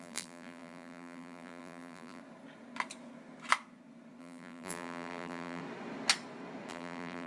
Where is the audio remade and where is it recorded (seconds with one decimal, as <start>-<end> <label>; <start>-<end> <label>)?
0.0-2.2 remade; 2.2-4.2 recorded; 4.2-5.6 remade; 5.6-6.7 recorded; 6.7-7.3 remade